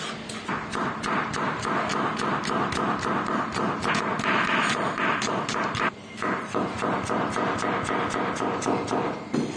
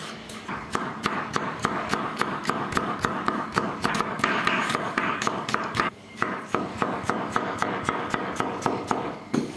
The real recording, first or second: first